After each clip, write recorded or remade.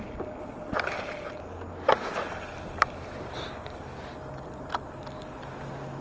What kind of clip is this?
recorded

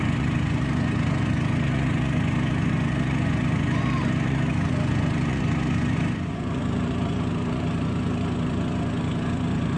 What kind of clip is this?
remade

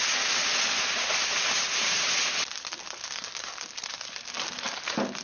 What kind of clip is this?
recorded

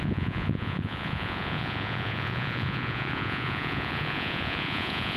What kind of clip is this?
remade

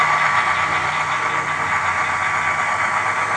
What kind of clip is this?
recorded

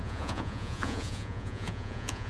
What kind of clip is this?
remade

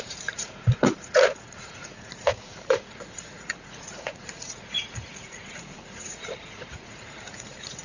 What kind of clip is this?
remade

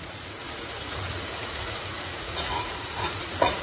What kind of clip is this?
remade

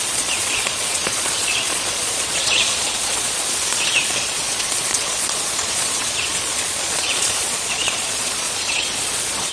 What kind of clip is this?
remade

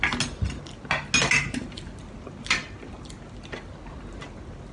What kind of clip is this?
recorded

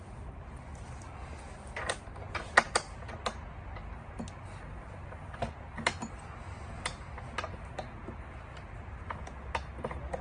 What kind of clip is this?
recorded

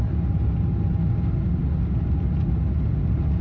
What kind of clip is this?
recorded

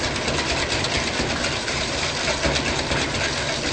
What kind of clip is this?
recorded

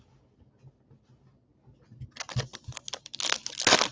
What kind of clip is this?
recorded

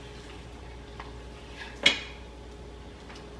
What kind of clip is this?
recorded